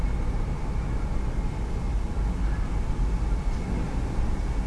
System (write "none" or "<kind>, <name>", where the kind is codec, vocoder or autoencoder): none